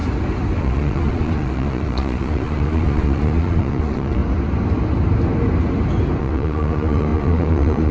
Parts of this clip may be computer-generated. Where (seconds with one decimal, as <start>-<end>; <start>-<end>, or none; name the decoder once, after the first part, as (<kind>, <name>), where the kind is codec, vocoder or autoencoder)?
0.6-4.2 (vocoder, Vocos); 6.2-7.9